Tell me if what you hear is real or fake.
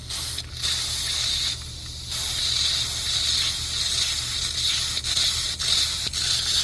real